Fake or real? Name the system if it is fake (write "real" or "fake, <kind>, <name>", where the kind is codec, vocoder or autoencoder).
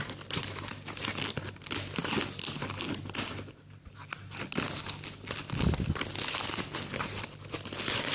real